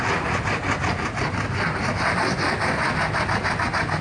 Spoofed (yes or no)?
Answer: no